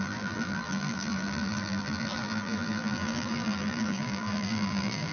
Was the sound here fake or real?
fake